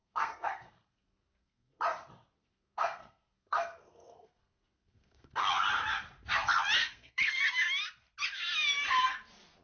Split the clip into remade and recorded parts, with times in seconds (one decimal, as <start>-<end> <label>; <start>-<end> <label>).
0.0-1.8 remade; 1.8-2.4 recorded; 2.4-5.4 remade; 5.4-6.8 recorded; 6.8-7.4 remade; 7.4-9.6 recorded